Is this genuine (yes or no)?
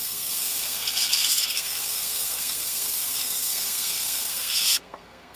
no